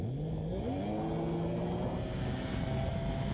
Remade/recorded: recorded